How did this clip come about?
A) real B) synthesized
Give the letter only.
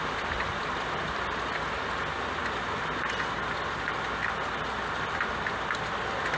A